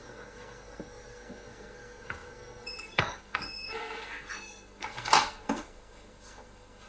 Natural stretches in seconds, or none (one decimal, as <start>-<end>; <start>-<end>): none